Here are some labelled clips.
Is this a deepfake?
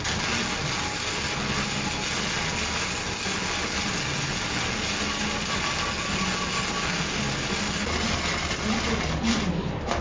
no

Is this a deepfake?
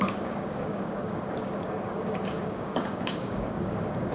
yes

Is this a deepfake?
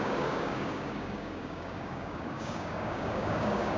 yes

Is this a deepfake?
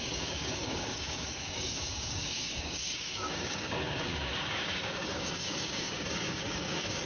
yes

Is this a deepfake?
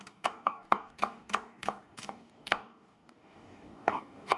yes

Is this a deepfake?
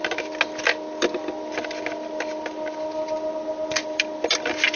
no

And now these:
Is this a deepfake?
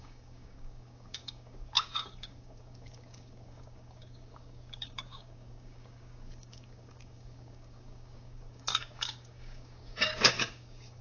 yes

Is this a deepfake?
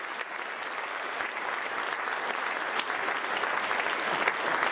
no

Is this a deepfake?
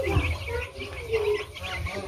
no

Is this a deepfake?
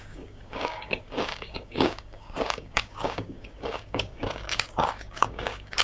yes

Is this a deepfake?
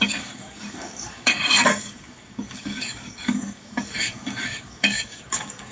yes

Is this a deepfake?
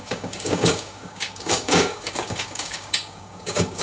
yes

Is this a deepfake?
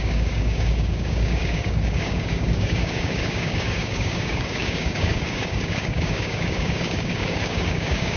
yes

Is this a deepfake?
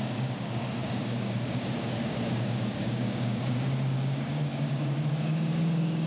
yes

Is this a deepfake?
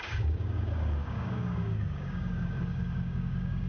yes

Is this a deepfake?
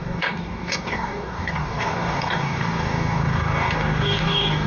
yes